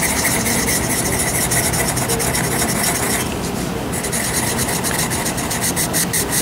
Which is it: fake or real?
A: real